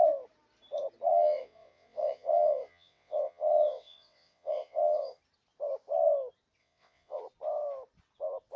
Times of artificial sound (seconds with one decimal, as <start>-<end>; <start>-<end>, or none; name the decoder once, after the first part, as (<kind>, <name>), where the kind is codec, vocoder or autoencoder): 1.1-5.2 (vocoder, WaveNeXt); 6.6-7.2